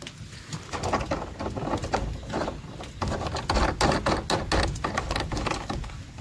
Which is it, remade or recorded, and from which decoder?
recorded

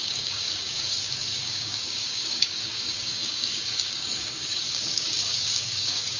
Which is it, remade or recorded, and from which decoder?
remade, codec, DAC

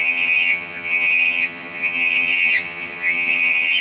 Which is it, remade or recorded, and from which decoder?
remade, vocoder, HiFi-GAN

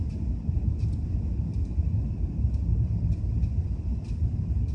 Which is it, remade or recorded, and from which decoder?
recorded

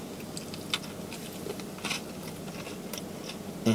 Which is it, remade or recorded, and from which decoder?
recorded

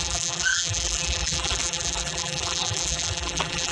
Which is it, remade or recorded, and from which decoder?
remade, vocoder, BigVGAN v2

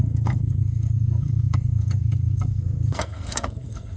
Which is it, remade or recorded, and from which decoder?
remade, codec, SNAC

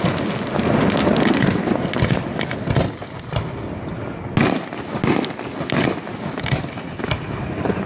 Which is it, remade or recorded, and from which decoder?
recorded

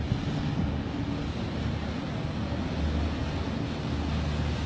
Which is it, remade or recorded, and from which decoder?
recorded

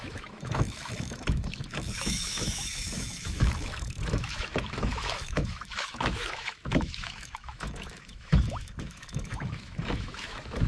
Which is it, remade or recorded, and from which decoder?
remade, autoencoder, DAC-VAE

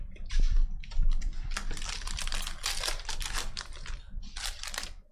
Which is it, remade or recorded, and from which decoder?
remade, vocoder, BigVGAN v2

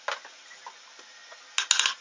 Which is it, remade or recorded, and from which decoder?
recorded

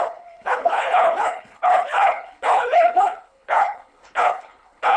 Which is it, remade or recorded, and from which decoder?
remade, codec, HILCodec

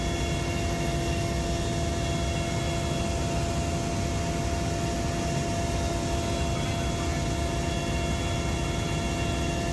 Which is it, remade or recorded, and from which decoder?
recorded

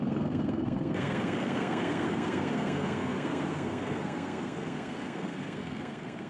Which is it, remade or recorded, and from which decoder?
remade, codec, SNAC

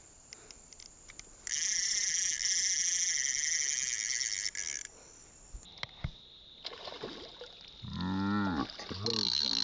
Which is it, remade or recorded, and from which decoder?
recorded